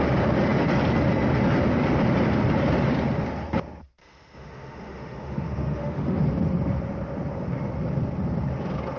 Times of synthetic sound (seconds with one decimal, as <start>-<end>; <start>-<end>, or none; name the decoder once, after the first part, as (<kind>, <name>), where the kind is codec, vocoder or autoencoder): 4.0-6.2 (autoencoder, DAC-VAE)